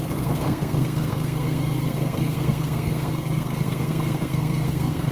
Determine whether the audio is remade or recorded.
remade